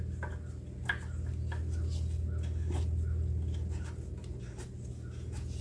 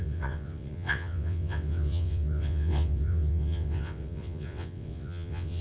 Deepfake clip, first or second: second